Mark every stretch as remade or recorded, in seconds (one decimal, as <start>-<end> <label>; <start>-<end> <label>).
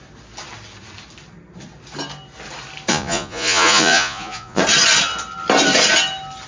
0.0-2.9 recorded; 2.9-4.6 remade; 4.6-6.5 recorded